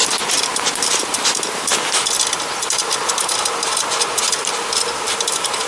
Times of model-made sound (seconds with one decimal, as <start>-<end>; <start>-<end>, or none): 0.5-1.7; 5.1-5.7